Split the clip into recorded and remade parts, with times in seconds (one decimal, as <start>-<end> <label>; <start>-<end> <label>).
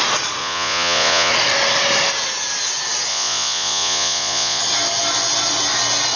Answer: 0.0-0.4 recorded; 0.4-1.3 remade; 1.3-3.1 recorded; 3.1-4.6 remade; 4.6-6.2 recorded